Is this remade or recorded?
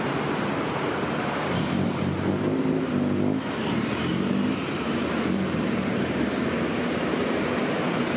remade